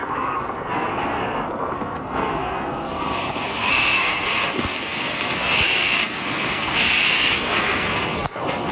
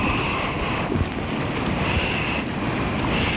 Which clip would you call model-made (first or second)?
first